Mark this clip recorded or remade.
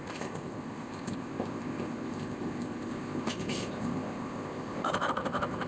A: remade